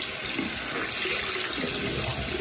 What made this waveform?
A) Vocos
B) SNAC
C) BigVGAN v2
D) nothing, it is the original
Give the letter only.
D